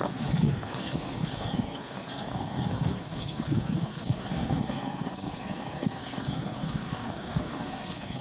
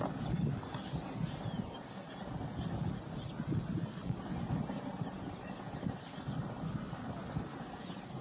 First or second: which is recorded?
second